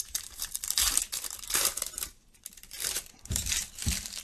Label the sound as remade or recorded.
remade